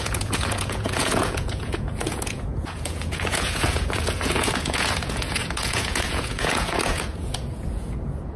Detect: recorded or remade remade